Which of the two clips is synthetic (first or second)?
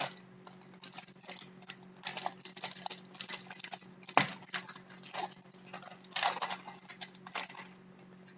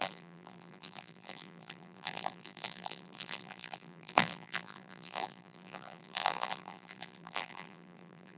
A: second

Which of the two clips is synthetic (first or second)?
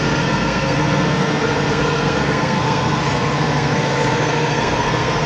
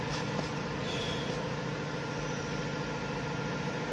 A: first